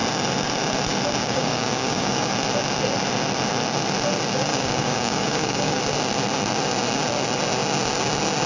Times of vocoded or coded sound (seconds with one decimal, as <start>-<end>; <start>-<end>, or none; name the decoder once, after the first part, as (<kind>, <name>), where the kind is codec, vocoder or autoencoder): 1.2-2.3 (codec, DAC); 4.5-5.8